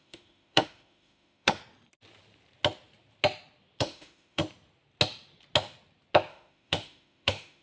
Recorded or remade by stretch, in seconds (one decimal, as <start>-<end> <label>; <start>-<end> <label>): 0.0-1.6 remade; 1.6-3.8 recorded; 3.8-4.4 remade; 4.4-6.3 recorded; 6.3-7.6 remade